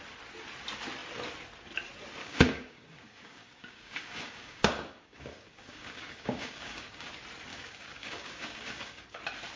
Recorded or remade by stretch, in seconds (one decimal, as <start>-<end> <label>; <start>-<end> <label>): 0.0-2.2 recorded; 2.2-7.1 remade; 7.1-7.5 recorded; 7.5-9.2 remade; 9.2-9.6 recorded